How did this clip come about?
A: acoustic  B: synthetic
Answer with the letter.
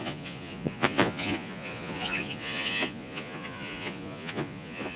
B